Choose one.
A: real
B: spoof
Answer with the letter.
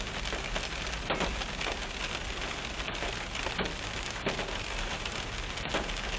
A